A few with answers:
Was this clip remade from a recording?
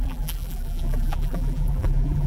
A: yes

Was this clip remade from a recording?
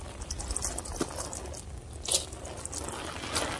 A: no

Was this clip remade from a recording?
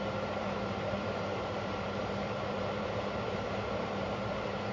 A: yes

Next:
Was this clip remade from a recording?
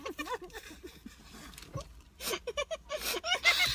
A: no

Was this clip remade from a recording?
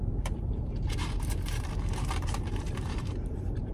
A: yes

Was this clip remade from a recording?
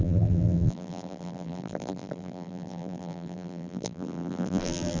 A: yes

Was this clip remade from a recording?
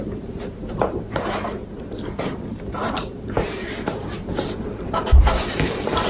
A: yes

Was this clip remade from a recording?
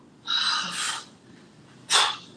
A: no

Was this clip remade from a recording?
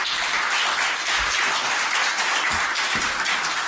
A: no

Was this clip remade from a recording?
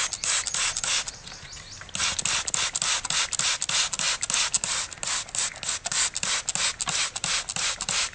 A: no